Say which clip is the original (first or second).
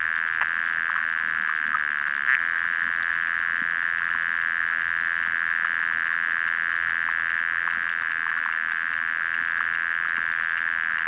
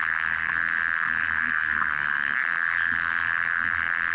first